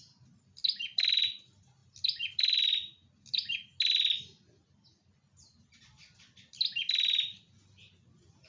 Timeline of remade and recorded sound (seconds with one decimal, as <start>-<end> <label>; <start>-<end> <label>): 0.0-8.5 recorded